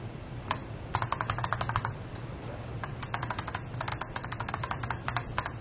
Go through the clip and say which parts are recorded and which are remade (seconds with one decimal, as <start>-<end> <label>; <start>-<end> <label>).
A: 0.0-5.6 recorded